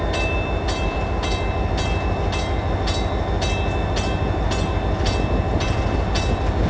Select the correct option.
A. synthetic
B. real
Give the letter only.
B